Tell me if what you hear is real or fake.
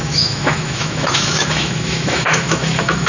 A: fake